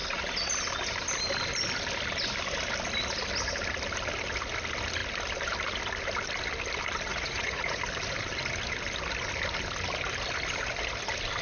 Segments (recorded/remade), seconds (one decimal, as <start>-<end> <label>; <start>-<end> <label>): 0.0-7.1 recorded; 7.1-7.8 remade; 7.8-11.4 recorded